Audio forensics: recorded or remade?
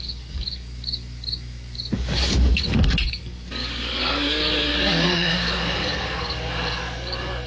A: remade